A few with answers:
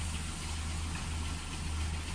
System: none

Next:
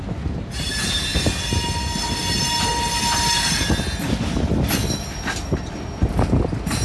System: none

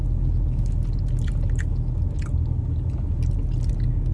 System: none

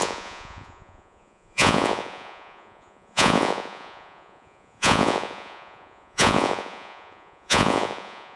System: vocoder, Vocos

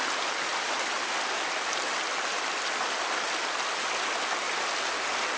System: none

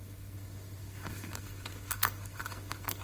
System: codec, SNAC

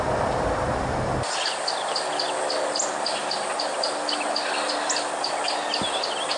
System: none